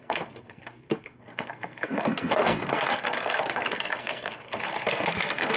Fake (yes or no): yes